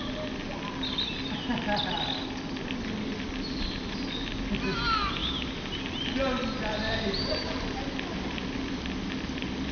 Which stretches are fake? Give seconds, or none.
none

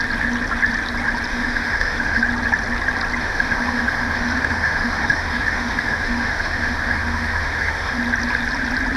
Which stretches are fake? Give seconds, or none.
1.3-2.2 (autoencoder, DAC-VAE); 3.2-8.0

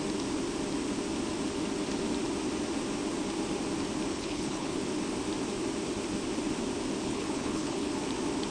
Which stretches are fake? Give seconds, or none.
4.1-4.8 (codec, HILCodec); 7.0-7.9

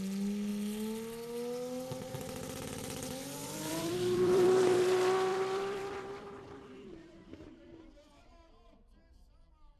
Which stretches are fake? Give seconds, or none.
3.4-4.8 (vocoder, BigVGAN v2); 5.3-8.2

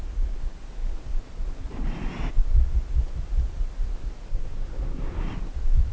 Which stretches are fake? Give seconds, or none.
4.3-5.2 (codec, SNAC)

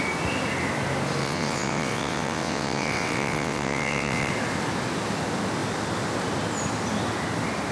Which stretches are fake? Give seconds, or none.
1.2-4.3 (vocoder, WaveNeXt)

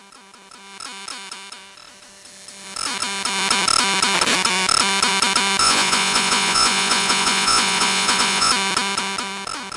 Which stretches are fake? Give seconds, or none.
5.6-8.5 (vocoder, Vocos)

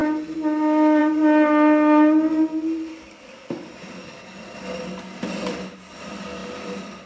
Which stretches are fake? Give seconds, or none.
2.9-3.7 (codec, DAC)